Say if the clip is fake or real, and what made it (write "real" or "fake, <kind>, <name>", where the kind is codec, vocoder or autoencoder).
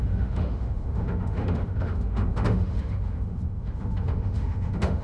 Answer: fake, autoencoder, DAC-VAE